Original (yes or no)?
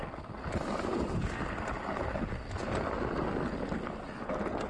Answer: yes